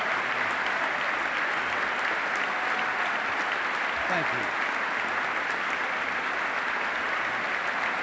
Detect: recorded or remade recorded